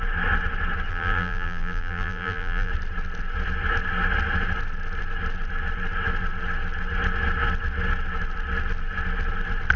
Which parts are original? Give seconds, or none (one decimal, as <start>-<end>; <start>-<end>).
0.0-0.9; 2.7-9.8